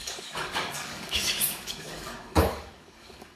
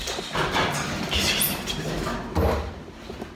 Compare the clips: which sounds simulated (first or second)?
first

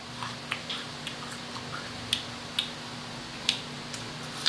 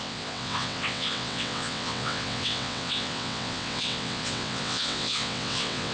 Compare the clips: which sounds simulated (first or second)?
second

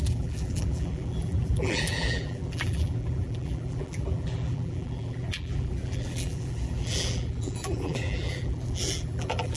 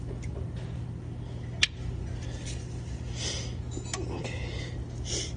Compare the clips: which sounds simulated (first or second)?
first